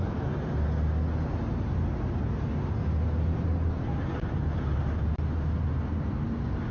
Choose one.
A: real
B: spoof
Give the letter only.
A